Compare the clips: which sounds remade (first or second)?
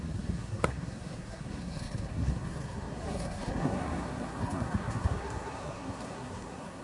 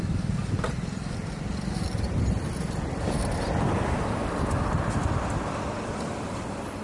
first